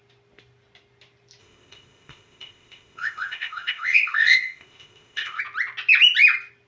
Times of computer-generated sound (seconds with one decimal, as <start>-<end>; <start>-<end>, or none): 1.4-5.4